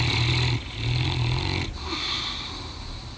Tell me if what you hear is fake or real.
real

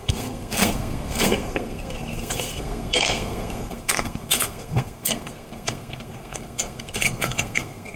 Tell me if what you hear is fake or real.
fake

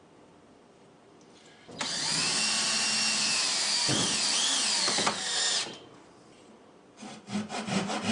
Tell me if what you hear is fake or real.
real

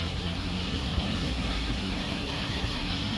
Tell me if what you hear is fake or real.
fake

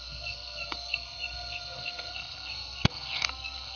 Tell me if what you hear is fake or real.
fake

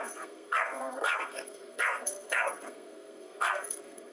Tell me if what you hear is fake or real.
fake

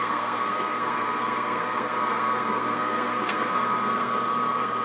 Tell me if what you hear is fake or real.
fake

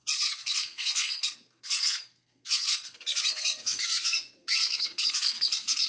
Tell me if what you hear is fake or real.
fake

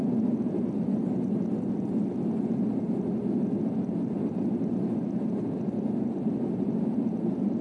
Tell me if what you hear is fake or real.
real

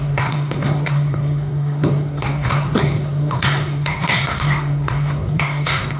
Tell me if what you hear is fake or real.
fake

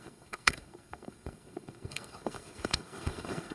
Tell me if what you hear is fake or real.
fake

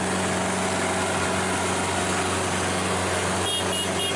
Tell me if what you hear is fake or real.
real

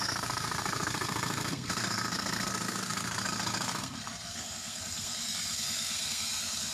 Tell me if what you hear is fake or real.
fake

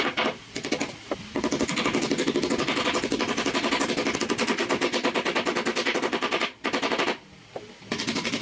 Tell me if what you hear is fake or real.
real